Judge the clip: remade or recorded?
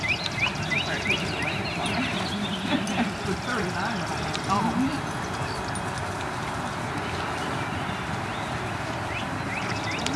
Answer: recorded